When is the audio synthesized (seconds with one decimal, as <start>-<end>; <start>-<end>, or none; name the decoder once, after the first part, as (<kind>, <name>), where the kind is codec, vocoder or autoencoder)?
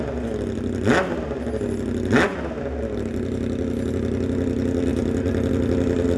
none